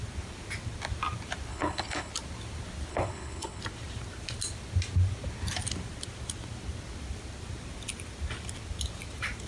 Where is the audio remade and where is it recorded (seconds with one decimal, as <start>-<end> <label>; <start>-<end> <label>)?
0.0-1.5 recorded; 1.5-2.1 remade; 2.1-2.9 recorded; 2.9-3.6 remade; 3.6-9.5 recorded